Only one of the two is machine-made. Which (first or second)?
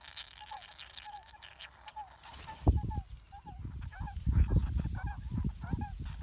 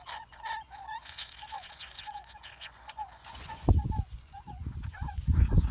second